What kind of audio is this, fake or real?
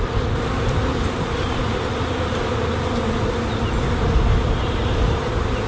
real